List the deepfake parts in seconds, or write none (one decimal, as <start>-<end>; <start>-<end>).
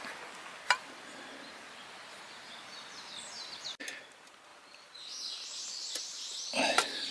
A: none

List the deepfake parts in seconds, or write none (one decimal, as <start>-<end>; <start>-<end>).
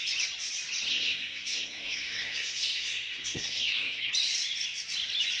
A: 0.9-4.1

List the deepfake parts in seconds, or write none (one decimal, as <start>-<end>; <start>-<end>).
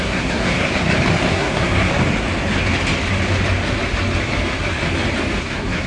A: 0.0-0.7; 1.3-1.9; 5.4-5.9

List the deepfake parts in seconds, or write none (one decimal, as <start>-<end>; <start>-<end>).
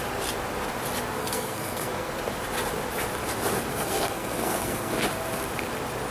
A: 1.2-2.1; 3.7-4.9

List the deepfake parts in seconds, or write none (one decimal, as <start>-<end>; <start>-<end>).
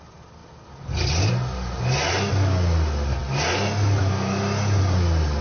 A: none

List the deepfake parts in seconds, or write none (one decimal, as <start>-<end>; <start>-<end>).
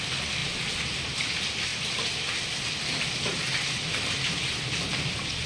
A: none